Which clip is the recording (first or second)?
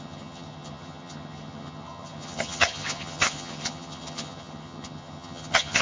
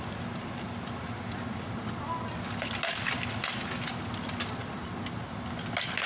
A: second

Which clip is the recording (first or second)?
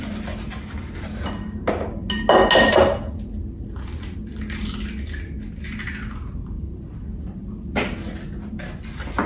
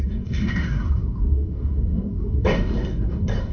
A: first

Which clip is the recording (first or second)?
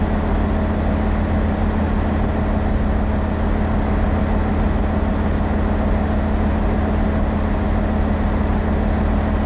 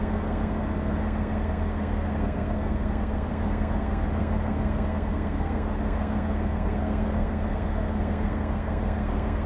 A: first